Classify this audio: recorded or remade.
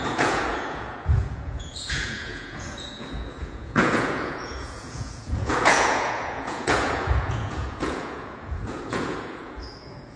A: remade